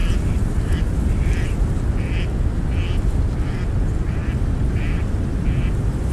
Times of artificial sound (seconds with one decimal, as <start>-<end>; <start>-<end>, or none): none

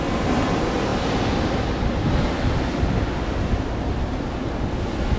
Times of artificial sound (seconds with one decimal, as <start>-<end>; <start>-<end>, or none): none

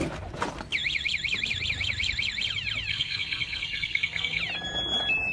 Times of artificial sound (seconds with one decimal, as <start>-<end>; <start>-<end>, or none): 2.9-4.4